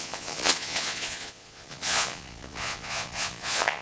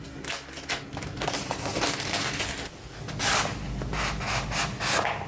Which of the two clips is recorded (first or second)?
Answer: second